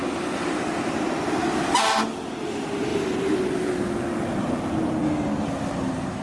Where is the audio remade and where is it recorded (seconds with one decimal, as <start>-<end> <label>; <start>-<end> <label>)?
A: 0.0-2.9 recorded; 2.9-3.7 remade; 3.7-4.4 recorded; 4.4-5.0 remade; 5.0-6.2 recorded